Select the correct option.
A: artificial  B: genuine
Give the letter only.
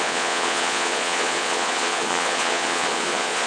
A